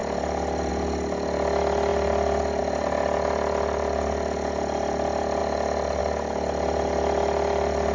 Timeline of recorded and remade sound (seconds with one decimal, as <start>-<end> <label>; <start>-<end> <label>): 0.0-7.9 recorded